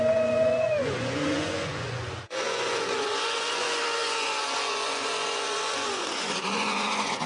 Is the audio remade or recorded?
remade